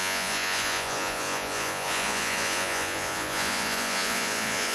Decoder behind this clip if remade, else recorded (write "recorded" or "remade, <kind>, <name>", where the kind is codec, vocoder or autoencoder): remade, vocoder, Vocos